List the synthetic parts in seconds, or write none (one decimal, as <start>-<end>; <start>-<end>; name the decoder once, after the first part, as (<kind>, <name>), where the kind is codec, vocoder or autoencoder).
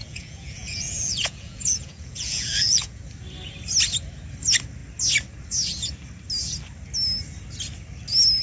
0.0-3.0 (vocoder, Vocos)